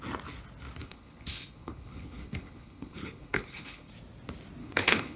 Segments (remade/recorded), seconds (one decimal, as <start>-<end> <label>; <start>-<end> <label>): 0.0-0.8 recorded; 0.8-3.9 remade; 3.9-4.6 recorded; 4.6-5.2 remade